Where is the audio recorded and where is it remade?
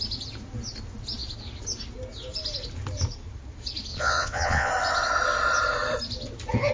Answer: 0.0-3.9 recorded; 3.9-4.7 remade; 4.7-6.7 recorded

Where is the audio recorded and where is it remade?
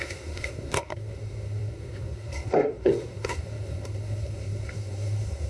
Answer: 0.0-5.5 remade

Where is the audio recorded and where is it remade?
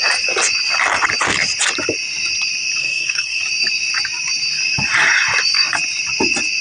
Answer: 0.0-2.8 recorded; 2.8-3.4 remade; 3.4-6.6 recorded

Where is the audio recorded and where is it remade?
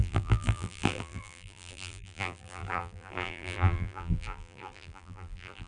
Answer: 0.0-5.7 remade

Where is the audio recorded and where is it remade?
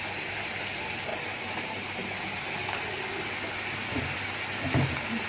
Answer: 0.0-5.3 recorded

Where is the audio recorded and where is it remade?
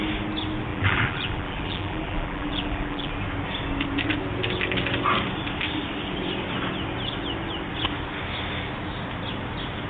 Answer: 0.0-0.7 recorded; 0.7-3.1 remade; 3.1-9.9 recorded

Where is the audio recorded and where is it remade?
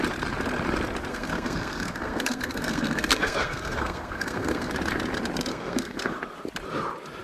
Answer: 0.0-1.1 recorded; 1.1-4.7 remade; 4.7-5.5 recorded; 5.5-6.2 remade; 6.2-7.2 recorded